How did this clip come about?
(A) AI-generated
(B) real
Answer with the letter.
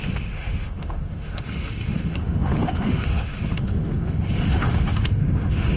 A